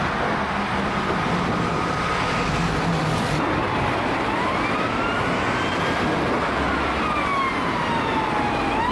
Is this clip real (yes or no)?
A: yes